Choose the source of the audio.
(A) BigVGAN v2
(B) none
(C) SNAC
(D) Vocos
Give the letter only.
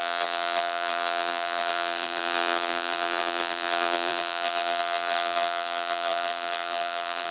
A